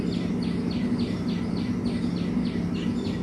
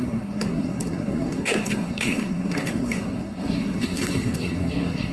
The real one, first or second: first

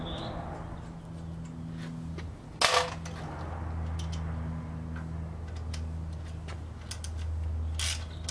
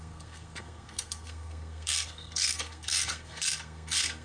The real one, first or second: first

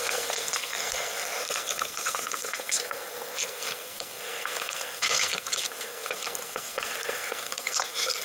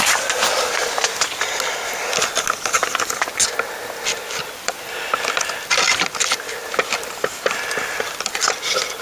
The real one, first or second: second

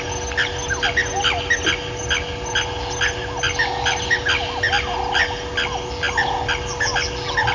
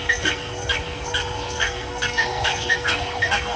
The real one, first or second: first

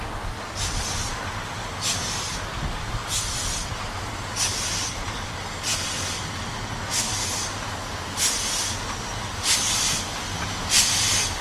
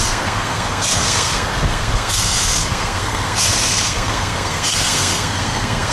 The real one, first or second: first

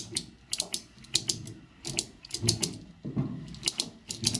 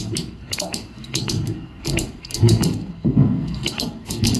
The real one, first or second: first